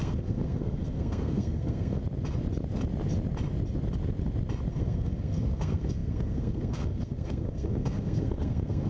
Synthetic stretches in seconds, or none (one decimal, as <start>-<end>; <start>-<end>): 0.0-2.0; 4.7-8.9

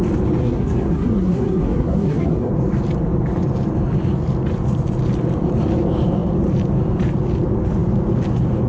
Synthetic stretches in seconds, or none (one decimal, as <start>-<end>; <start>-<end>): 0.4-2.5